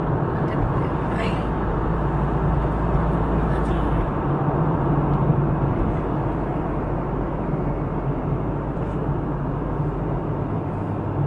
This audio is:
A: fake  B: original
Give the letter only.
B